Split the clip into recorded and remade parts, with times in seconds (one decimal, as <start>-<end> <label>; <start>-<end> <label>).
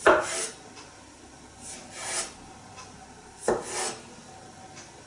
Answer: 0.0-5.1 recorded